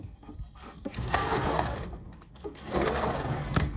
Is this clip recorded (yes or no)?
no